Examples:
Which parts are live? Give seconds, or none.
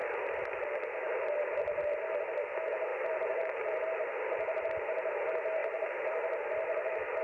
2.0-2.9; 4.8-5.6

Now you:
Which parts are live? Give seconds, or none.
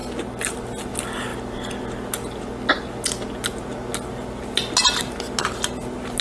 0.0-6.2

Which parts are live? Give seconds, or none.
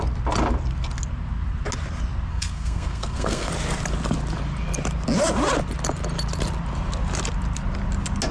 0.0-2.3; 3.5-8.3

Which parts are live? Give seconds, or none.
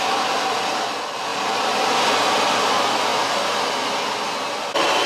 0.0-1.3; 2.1-5.1